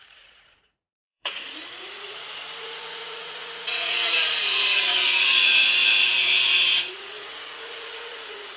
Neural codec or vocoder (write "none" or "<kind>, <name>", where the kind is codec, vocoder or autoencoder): vocoder, Vocos